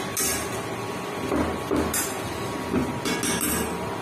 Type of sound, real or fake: real